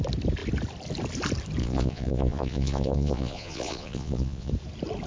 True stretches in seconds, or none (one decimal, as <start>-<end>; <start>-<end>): 0.0-1.6; 4.5-5.1